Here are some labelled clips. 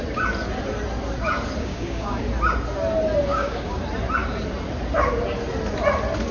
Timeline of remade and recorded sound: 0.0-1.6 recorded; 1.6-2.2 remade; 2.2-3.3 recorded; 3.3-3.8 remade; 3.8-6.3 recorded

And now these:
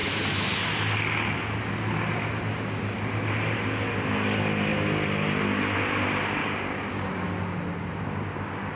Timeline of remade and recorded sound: 0.0-6.4 recorded; 6.4-7.1 remade; 7.1-8.7 recorded

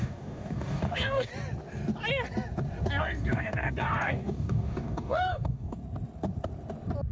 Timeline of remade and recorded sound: 0.0-1.3 remade; 1.3-3.0 recorded; 3.0-5.8 remade; 5.8-7.1 recorded